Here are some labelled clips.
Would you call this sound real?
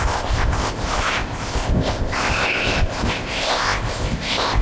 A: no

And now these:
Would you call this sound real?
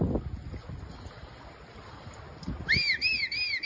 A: yes